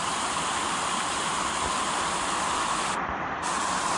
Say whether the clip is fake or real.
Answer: real